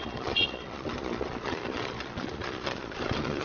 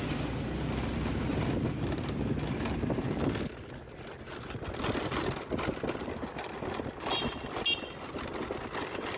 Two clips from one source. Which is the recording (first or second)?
second